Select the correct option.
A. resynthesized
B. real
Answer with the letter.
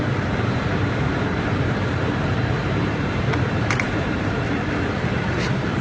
A